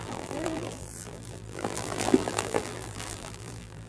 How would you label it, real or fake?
fake